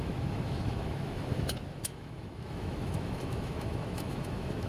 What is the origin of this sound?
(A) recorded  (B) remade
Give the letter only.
B